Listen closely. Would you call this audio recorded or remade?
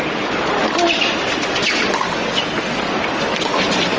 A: recorded